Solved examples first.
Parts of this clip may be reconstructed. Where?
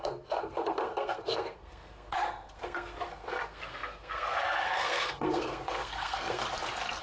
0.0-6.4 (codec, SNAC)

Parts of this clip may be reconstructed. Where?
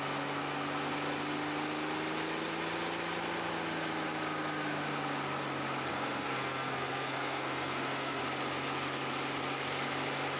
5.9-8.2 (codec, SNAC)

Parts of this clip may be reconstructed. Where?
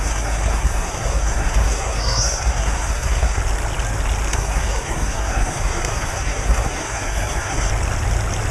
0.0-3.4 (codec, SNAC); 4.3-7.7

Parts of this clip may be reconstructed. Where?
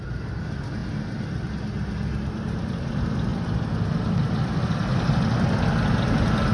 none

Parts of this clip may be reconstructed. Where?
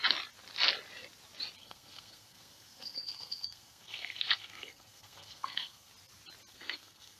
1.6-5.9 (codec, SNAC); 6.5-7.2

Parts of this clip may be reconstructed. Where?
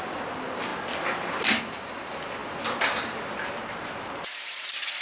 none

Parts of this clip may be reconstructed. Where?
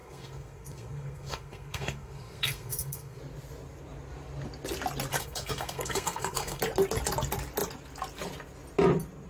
0.0-3.2 (codec, SNAC); 5.1-6.6